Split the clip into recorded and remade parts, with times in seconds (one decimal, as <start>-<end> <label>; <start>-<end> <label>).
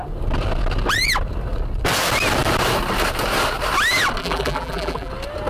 0.0-4.2 recorded; 4.2-5.1 remade; 5.1-5.5 recorded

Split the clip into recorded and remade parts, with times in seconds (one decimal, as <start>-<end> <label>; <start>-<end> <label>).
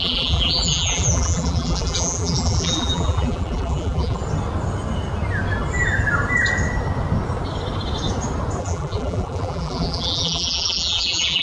0.0-4.2 remade; 4.2-8.6 recorded; 8.6-11.4 remade